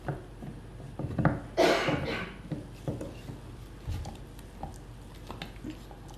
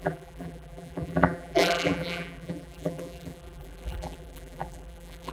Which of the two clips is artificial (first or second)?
second